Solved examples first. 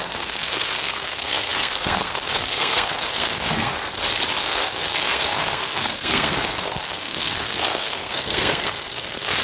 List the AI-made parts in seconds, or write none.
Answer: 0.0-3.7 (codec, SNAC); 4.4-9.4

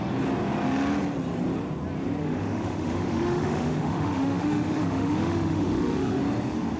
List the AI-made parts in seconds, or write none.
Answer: 2.2-6.2 (autoencoder, DAC-VAE)